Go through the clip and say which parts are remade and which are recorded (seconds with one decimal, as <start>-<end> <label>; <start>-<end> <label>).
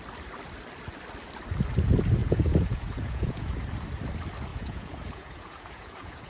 0.0-2.2 recorded; 2.2-3.7 remade; 3.7-4.5 recorded; 4.5-6.3 remade